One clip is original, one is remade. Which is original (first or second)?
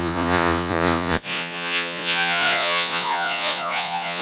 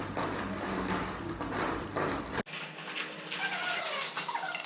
second